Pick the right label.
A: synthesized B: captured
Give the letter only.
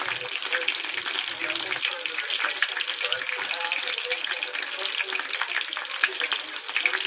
B